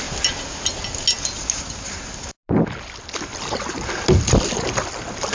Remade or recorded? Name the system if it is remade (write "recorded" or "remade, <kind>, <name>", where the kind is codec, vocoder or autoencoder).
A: recorded